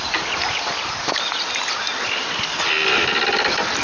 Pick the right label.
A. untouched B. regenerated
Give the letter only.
A